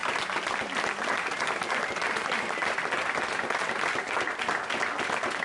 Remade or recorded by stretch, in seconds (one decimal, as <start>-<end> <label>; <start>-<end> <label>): 0.0-5.4 recorded